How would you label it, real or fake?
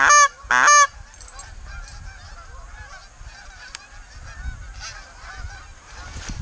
real